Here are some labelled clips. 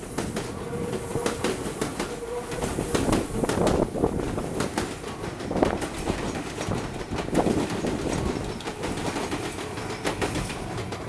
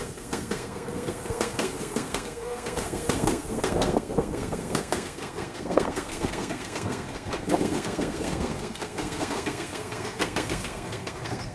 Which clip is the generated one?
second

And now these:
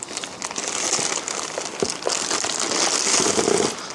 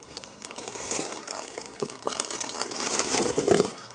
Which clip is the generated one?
second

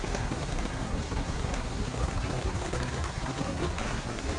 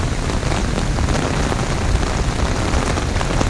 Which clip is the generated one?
first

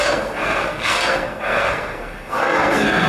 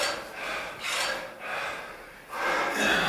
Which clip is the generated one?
first